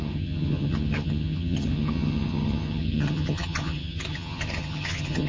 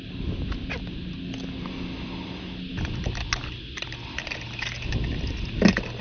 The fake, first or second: first